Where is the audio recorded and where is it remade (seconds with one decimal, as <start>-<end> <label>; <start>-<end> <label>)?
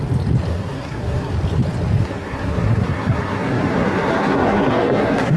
0.0-0.5 recorded; 0.5-1.3 remade; 1.3-2.0 recorded; 2.0-5.4 remade